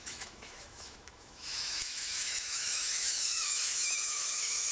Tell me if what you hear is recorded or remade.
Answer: remade